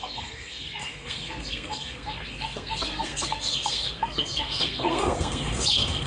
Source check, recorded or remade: remade